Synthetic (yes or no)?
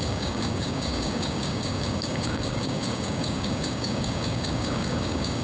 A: yes